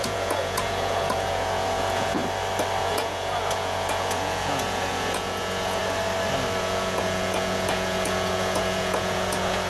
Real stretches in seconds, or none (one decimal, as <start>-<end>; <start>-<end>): 2.2-2.8; 5.8-6.6